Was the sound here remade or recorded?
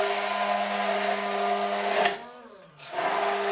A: recorded